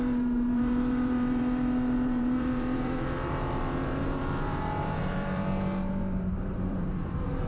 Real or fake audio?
fake